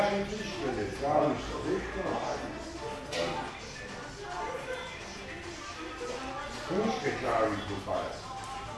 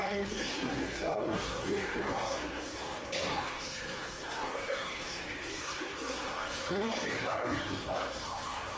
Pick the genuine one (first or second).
first